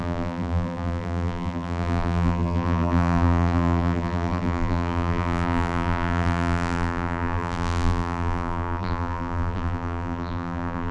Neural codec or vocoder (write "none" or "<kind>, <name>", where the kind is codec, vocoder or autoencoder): vocoder, BigVGAN v2